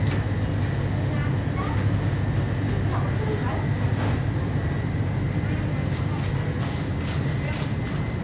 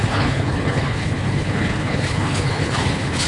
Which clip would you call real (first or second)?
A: first